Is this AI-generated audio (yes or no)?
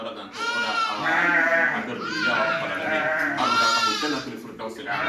no